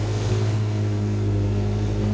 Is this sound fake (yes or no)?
yes